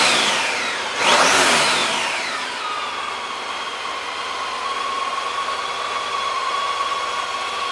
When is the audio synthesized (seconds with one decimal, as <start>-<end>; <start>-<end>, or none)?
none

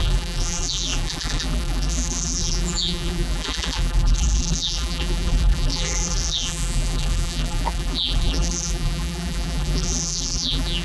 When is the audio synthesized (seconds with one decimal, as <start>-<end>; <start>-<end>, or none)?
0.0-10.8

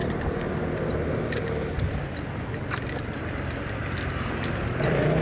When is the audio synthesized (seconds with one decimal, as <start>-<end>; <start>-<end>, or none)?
none

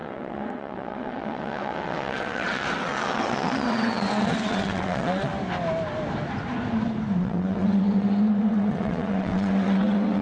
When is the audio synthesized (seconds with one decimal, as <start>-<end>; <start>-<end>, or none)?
0.0-5.3; 7.2-10.2